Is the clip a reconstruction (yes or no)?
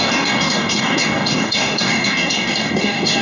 yes